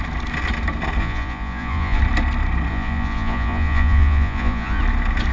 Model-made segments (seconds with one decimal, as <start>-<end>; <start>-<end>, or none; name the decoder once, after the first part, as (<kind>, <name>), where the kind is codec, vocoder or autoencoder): 1.0-2.0 (vocoder, Vocos); 2.7-4.8